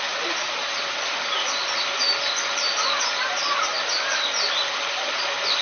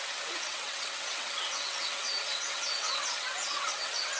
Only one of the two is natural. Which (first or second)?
first